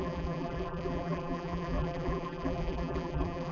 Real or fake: fake